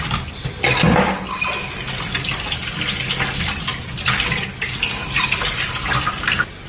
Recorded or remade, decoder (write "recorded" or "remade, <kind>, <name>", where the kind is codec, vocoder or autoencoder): recorded